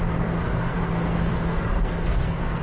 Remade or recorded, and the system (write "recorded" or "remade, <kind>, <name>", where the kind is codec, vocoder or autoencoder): remade, codec, SNAC